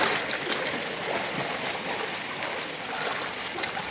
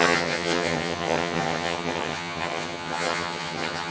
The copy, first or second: second